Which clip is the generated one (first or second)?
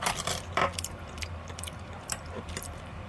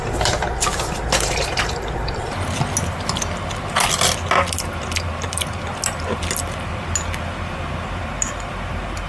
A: first